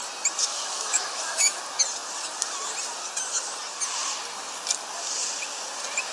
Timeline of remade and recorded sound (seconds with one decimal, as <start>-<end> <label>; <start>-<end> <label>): 0.0-0.5 recorded; 0.5-1.6 remade; 1.6-6.1 recorded